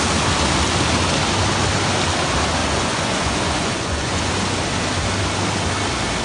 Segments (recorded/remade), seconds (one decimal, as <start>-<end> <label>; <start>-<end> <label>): 0.0-2.6 recorded; 2.6-4.3 remade; 4.3-6.2 recorded